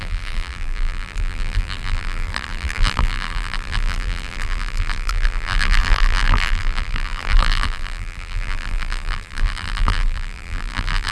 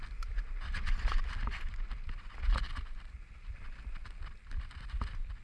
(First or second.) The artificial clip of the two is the first